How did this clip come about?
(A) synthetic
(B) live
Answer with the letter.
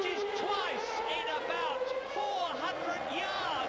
A